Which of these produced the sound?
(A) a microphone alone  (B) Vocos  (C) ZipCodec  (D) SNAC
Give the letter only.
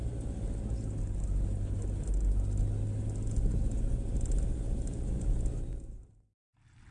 A